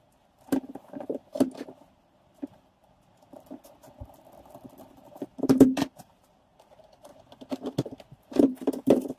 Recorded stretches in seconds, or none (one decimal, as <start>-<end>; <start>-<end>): 1.2-4.9; 7.1-8.4